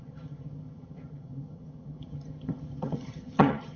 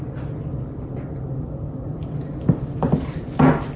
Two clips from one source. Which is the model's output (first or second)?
first